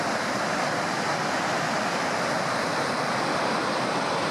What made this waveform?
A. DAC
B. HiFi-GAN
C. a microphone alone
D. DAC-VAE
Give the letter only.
C